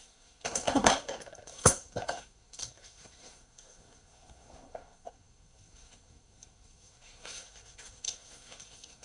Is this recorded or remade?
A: remade